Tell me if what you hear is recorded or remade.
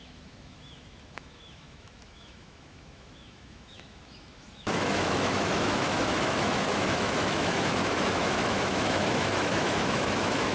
remade